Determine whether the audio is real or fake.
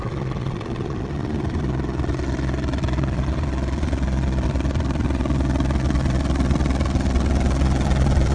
fake